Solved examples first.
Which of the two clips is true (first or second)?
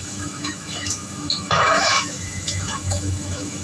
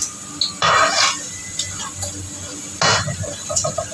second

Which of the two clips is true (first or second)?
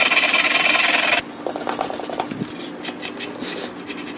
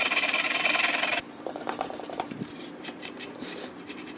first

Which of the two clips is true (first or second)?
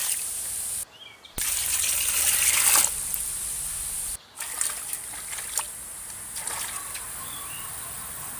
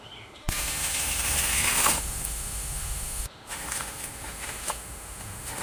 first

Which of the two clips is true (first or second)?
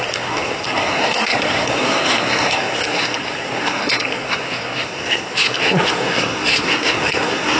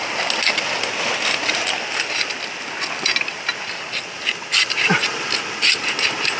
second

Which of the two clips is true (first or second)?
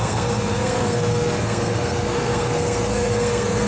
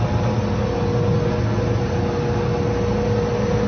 second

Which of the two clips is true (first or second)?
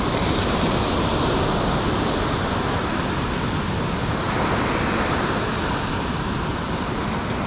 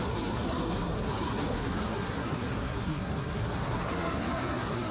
first